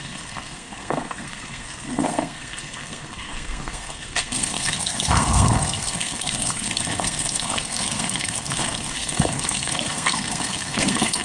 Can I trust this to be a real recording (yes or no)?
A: no